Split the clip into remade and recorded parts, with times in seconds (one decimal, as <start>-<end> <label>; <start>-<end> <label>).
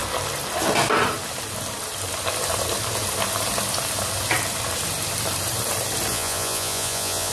0.0-6.1 recorded; 6.1-7.3 remade